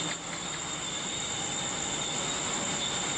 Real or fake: real